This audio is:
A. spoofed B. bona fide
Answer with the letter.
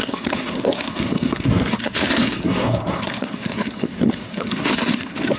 A